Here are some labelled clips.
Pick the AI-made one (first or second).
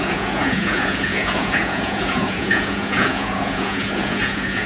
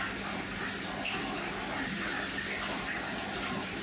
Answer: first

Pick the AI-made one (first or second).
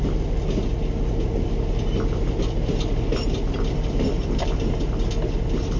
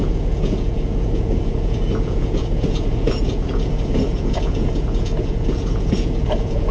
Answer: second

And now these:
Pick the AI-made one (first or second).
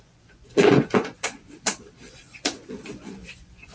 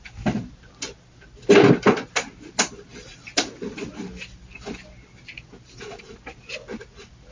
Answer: first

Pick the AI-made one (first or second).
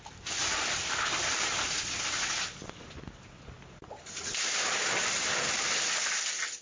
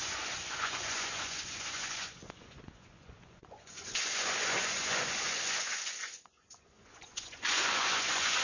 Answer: second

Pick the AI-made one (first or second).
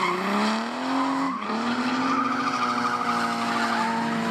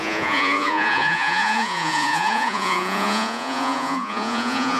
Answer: second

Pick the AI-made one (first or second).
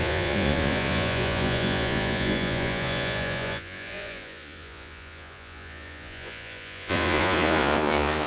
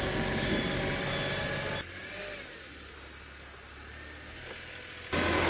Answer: first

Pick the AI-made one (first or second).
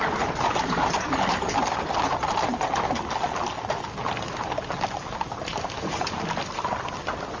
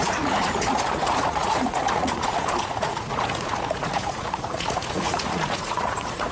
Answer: second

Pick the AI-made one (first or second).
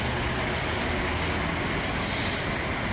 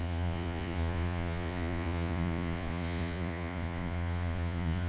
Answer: second